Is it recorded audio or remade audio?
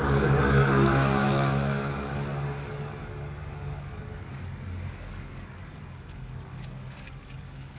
remade